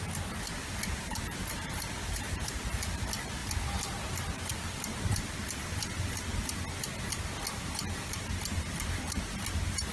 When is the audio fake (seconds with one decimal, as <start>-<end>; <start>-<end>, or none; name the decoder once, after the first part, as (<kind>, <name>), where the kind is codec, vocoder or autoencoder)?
0.6-3.0 (vocoder, BigVGAN v2)